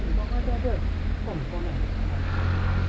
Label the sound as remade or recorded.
recorded